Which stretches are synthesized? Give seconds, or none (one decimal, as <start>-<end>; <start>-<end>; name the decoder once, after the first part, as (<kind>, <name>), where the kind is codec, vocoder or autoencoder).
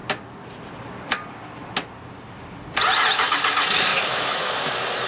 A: 3.9-4.6 (autoencoder, DAC-VAE)